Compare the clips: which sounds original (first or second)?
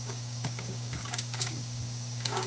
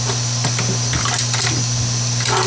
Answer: second